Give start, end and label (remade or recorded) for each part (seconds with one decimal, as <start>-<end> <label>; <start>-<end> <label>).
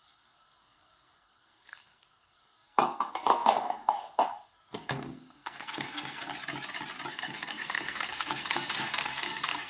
0.0-6.3 remade; 6.3-7.1 recorded; 7.1-9.7 remade